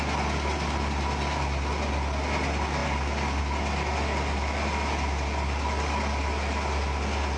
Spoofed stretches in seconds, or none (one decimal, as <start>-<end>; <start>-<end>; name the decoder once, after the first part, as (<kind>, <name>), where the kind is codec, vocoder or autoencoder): none